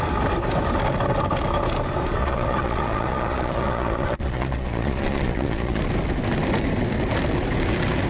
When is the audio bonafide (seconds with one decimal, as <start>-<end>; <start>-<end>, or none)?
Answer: 0.0-2.2; 5.8-8.1